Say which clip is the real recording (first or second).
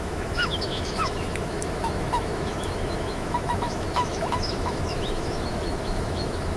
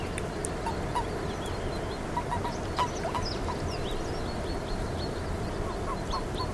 second